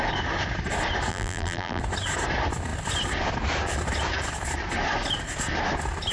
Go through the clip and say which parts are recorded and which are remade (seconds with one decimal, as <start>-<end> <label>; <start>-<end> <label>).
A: 0.0-1.1 recorded; 1.1-1.8 remade; 1.8-6.1 recorded